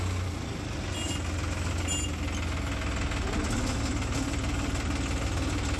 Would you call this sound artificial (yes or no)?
no